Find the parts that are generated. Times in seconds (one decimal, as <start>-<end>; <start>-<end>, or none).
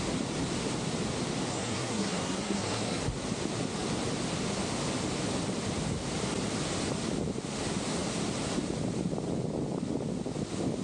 1.5-3.0